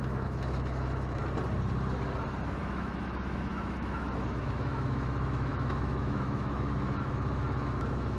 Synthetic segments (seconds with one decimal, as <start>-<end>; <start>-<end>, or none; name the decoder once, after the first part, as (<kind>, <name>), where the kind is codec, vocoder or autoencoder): 0.0-1.2 (autoencoder, DAC-VAE); 2.6-8.2